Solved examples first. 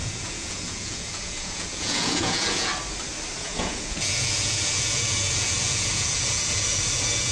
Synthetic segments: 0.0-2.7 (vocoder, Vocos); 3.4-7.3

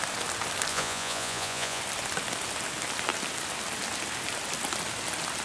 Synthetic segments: 0.7-1.8 (vocoder, Vocos)

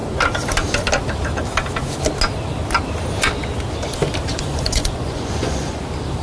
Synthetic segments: 4.3-5.8 (vocoder, Vocos)

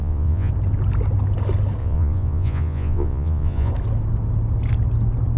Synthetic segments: 0.0-0.5 (vocoder, Vocos); 1.8-3.7

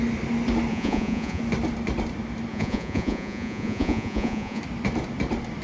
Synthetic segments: 0.7-1.4 (vocoder, Vocos); 2.5-4.6

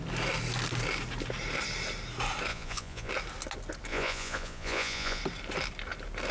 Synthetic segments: 2.5-3.1 (vocoder, Vocos); 3.9-5.2

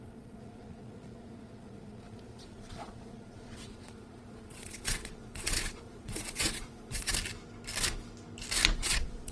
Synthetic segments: 0.0-7.1 (vocoder, Vocos); 8.8-9.3